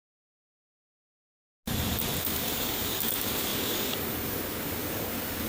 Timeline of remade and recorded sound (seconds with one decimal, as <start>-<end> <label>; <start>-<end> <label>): 0.0-1.0 remade; 1.0-2.2 recorded; 2.2-5.5 remade